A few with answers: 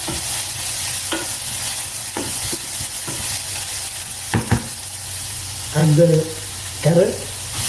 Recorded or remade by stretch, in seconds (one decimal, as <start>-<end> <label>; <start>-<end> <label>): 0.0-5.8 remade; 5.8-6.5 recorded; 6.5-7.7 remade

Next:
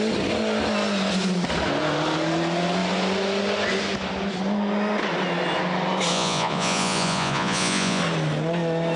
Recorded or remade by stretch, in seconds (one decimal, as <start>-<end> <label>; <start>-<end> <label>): 0.0-6.1 recorded; 6.1-8.0 remade; 8.0-9.0 recorded

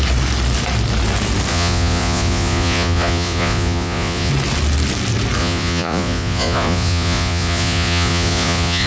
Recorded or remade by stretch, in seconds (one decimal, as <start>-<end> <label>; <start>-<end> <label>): 0.0-1.5 recorded; 1.5-4.3 remade; 4.3-5.4 recorded; 5.4-8.9 remade

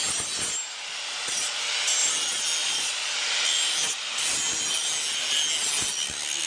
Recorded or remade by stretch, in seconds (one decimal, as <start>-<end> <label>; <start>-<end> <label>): 0.0-2.6 recorded; 2.6-3.1 remade; 3.1-6.5 recorded